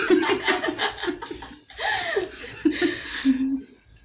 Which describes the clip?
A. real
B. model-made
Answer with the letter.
A